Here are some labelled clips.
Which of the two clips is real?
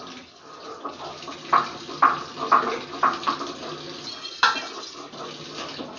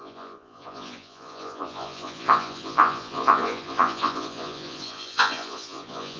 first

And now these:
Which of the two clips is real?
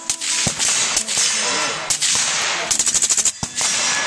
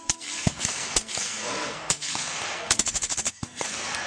first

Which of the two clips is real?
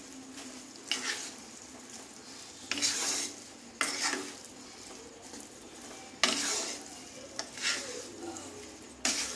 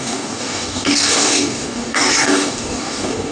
first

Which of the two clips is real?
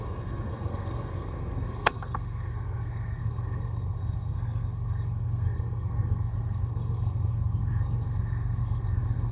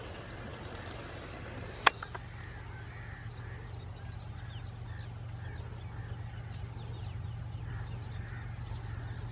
second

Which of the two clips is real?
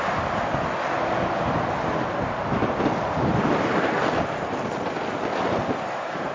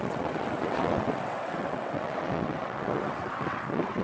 first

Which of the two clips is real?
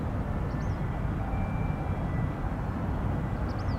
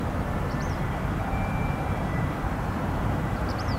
first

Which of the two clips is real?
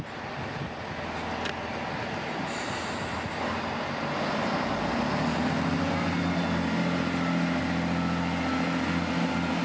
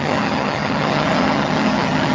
first